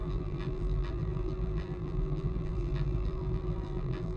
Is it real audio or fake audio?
fake